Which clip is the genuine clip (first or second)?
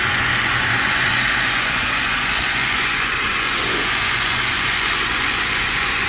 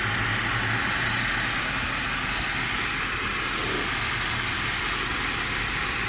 second